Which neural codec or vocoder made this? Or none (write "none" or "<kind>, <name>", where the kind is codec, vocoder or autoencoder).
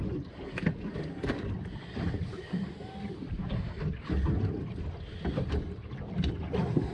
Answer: none